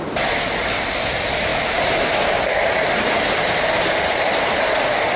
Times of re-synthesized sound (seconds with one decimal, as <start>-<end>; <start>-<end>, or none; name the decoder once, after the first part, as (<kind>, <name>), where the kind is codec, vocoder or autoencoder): 1.5-4.6 (vocoder, BigVGAN v2)